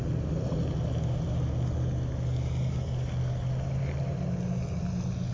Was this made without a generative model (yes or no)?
yes